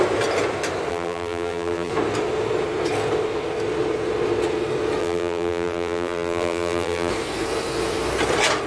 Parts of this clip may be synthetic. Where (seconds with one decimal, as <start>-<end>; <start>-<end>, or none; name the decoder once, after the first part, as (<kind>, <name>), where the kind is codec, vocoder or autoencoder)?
0.9-1.9 (vocoder, BigVGAN v2); 5.0-7.1